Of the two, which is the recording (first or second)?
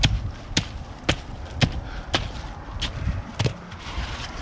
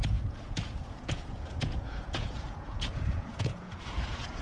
first